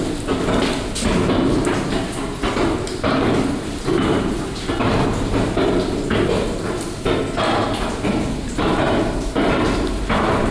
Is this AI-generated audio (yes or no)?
no